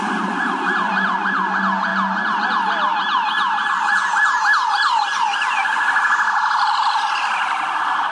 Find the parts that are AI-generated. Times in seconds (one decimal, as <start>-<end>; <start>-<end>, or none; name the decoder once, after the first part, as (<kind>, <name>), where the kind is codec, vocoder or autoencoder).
none